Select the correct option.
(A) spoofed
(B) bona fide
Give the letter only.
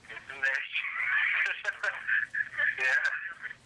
B